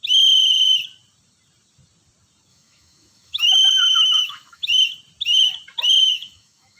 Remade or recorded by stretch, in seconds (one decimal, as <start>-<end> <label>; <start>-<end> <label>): 0.0-2.5 recorded; 2.5-4.7 remade; 4.7-6.1 recorded; 6.1-6.8 remade